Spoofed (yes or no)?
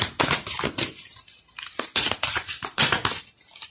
no